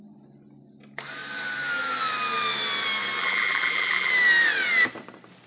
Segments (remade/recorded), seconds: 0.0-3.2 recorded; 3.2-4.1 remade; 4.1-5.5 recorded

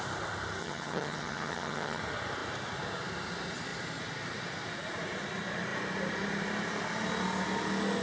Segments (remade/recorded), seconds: 0.0-0.6 recorded; 0.6-2.0 remade; 2.0-8.0 recorded

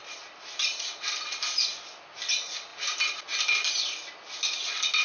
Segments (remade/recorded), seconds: 0.0-5.0 recorded

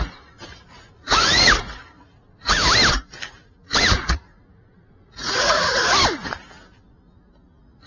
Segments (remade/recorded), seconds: 0.0-2.6 remade; 2.6-3.8 recorded; 3.8-5.7 remade; 5.7-7.9 recorded